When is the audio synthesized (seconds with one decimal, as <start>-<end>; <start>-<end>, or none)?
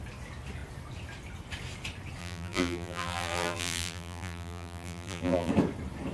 2.2-5.5